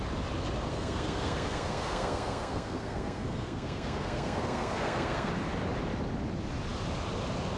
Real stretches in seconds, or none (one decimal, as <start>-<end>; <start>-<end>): 0.0-0.7; 5.3-7.6